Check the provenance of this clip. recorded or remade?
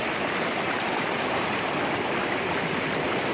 remade